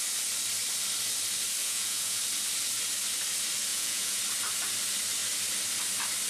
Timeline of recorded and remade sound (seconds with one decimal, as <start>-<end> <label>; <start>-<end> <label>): 0.0-1.6 recorded; 1.6-2.2 remade; 2.2-3.7 recorded; 3.7-4.2 remade; 4.2-6.3 recorded